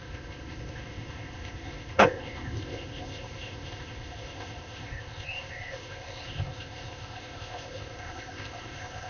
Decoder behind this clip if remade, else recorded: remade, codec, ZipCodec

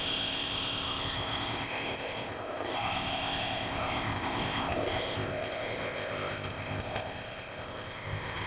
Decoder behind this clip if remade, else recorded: remade, codec, ZipCodec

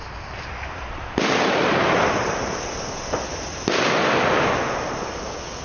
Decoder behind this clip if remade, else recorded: recorded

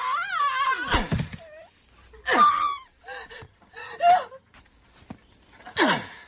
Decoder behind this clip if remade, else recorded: recorded